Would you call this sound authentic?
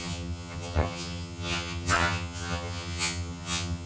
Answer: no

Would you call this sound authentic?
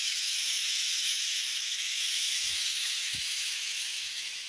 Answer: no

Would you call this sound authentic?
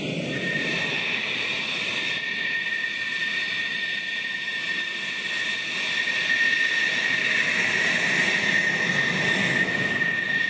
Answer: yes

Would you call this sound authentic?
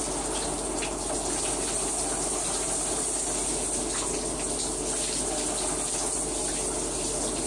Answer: yes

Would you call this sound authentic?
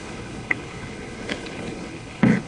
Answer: no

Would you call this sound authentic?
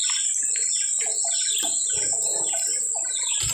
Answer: yes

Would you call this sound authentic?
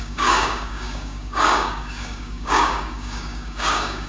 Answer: no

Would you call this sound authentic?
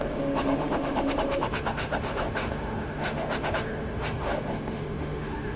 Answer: no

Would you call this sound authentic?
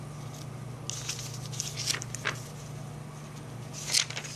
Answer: yes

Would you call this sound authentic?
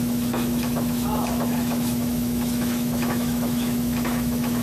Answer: no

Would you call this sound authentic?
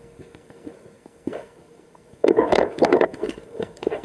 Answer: no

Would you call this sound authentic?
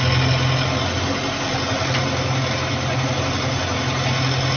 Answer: yes